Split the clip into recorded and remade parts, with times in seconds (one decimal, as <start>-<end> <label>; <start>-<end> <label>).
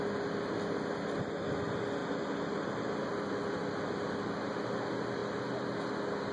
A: 0.0-6.3 recorded